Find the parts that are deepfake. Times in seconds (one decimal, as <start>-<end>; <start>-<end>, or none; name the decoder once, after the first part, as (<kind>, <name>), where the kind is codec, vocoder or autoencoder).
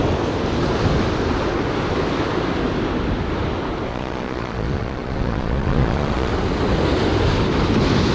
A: 3.9-6.3 (vocoder, Vocos)